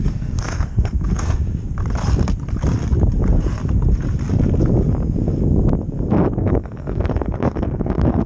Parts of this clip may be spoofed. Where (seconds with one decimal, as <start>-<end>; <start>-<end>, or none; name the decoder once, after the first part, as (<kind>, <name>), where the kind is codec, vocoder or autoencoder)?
0.0-1.4 (codec, SNAC); 6.4-8.3